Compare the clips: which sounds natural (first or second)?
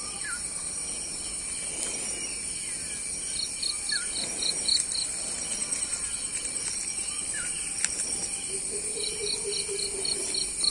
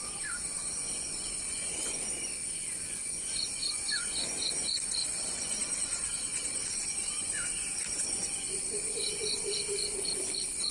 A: first